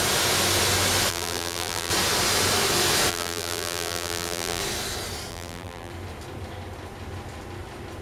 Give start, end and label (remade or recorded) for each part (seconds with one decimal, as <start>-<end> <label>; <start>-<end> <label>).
0.0-1.1 recorded; 1.1-1.9 remade; 1.9-3.1 recorded; 3.1-4.6 remade; 4.6-5.3 recorded; 5.3-5.9 remade; 5.9-8.0 recorded

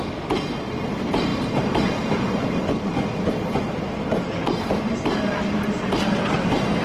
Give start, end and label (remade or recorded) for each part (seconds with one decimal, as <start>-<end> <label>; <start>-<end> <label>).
0.0-1.3 recorded; 1.3-1.8 remade; 1.8-6.8 recorded

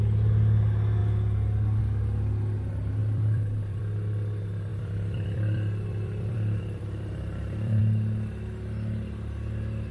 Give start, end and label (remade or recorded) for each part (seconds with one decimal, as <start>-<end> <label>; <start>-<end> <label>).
0.0-3.0 recorded; 3.0-3.8 remade; 3.8-4.7 recorded; 4.7-7.8 remade; 7.8-9.9 recorded

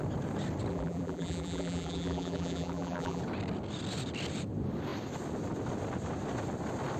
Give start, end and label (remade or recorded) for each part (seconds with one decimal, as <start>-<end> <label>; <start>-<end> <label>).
0.0-0.7 recorded; 0.7-3.2 remade; 3.2-7.0 recorded

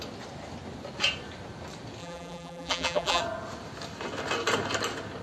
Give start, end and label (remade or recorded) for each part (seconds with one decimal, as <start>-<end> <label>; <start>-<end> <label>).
0.0-2.0 recorded; 2.0-3.2 remade; 3.2-5.2 recorded